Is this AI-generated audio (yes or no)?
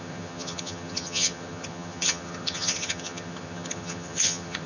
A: yes